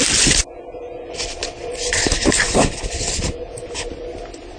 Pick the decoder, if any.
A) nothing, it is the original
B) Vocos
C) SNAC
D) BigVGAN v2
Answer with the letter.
A